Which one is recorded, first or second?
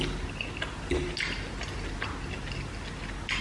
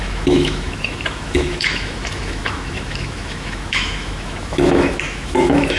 first